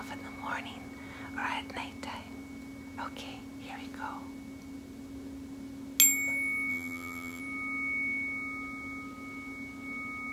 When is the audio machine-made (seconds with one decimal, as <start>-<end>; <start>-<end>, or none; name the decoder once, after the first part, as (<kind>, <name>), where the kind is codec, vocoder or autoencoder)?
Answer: 6.7-7.4 (vocoder, BigVGAN v2)